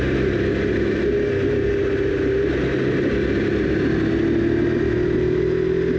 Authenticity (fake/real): real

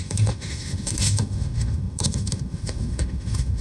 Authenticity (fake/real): fake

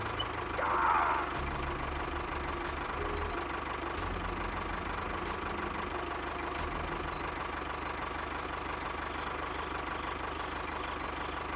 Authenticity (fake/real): real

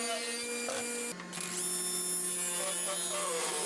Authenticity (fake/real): real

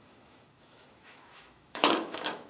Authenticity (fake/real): fake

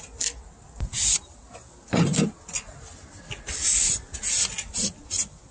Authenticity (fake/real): real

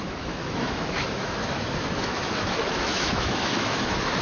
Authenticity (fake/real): fake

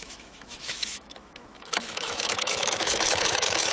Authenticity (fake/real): fake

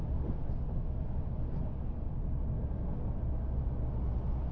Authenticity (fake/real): real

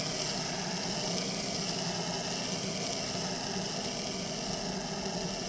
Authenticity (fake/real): real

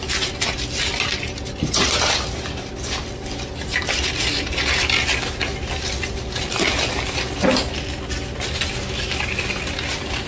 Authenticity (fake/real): real